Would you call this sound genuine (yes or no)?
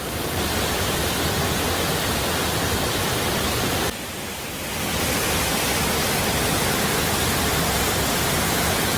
yes